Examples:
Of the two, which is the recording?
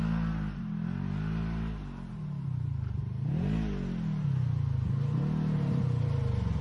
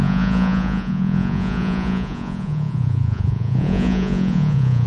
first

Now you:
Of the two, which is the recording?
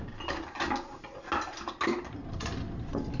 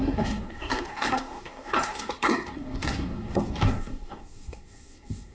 first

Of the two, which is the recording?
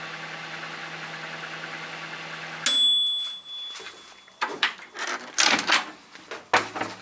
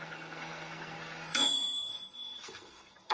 first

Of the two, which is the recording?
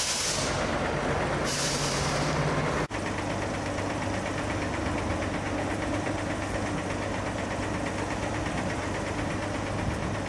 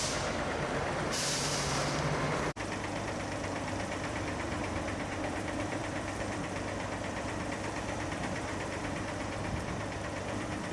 first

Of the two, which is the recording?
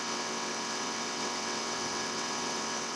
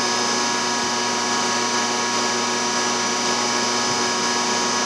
second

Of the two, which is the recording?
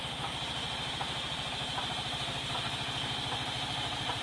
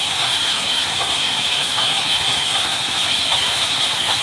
first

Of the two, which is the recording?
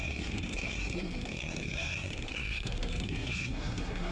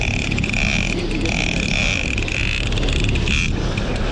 second